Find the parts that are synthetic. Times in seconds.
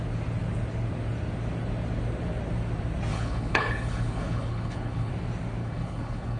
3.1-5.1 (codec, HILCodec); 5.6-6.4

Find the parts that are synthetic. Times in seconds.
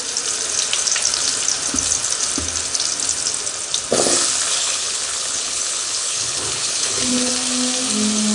4.6-7.3 (codec, HILCodec)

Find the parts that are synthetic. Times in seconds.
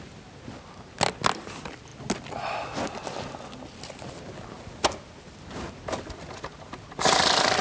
none